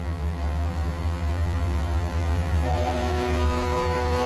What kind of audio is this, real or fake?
fake